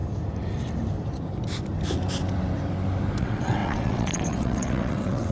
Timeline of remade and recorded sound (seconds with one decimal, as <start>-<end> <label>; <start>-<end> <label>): 0.0-3.2 recorded; 3.2-5.3 remade